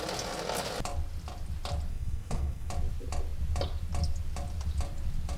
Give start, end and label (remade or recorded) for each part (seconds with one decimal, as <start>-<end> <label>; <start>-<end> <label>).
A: 0.0-1.9 recorded; 1.9-2.7 remade; 2.7-5.4 recorded